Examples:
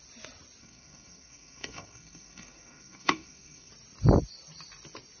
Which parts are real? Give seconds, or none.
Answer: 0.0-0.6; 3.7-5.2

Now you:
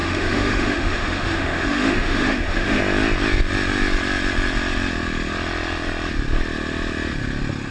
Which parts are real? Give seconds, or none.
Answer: 2.8-7.7